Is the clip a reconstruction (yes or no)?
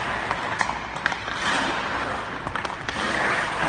no